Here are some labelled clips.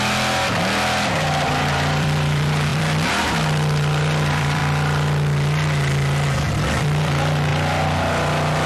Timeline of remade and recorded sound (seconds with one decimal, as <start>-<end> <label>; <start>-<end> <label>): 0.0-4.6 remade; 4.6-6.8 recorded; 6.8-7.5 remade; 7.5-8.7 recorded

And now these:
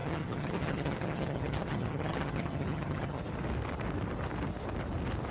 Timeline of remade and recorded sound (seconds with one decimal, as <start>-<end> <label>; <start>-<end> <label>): 0.0-3.2 remade; 3.2-5.3 recorded

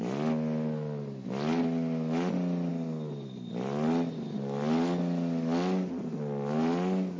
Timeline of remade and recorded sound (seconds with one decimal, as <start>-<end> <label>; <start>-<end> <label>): 0.0-7.2 recorded

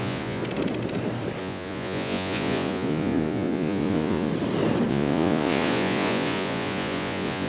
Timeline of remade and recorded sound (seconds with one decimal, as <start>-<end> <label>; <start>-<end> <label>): 0.0-0.4 remade; 0.4-1.4 recorded; 1.4-4.3 remade; 4.3-4.9 recorded; 4.9-7.5 remade

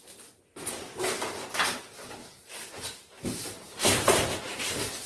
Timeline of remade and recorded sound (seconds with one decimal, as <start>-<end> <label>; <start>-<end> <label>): 0.0-0.5 recorded; 0.5-1.3 remade; 1.3-2.2 recorded; 2.2-4.6 remade; 4.6-5.1 recorded

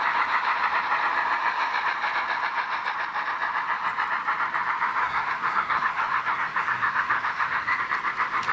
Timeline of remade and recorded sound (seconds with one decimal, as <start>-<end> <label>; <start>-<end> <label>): 0.0-5.0 recorded; 5.0-7.8 remade; 7.8-8.5 recorded

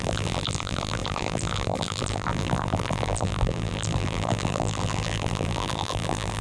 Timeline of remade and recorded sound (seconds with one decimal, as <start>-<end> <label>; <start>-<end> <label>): 0.0-6.4 remade

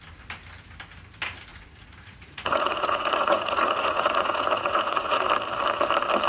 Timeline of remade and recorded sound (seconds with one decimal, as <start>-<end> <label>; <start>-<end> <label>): 0.0-1.5 recorded; 1.5-5.3 remade; 5.3-6.3 recorded